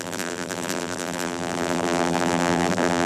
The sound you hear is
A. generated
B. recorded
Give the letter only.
A